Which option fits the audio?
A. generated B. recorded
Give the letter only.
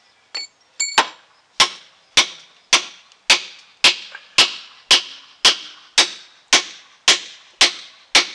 B